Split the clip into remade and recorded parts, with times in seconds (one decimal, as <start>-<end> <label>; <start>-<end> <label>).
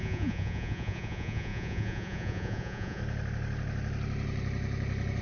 0.0-3.0 remade; 3.0-5.2 recorded